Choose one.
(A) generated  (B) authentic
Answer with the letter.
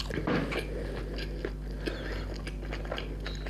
B